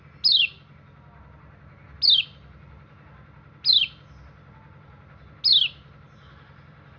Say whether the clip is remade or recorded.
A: recorded